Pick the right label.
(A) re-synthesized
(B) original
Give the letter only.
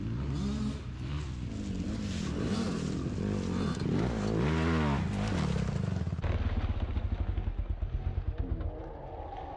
B